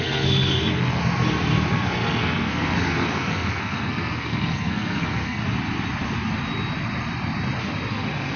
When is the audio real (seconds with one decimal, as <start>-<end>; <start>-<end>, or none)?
1.0-1.7; 5.4-7.9